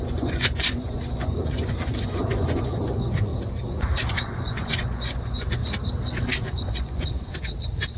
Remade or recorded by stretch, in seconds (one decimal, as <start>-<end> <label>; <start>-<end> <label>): 0.0-3.3 remade; 3.3-4.1 recorded; 4.1-5.6 remade; 5.6-6.2 recorded; 6.2-7.3 remade; 7.3-8.0 recorded